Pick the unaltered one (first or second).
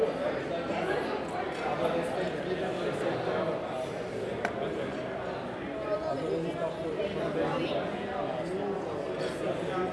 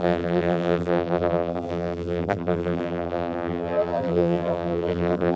first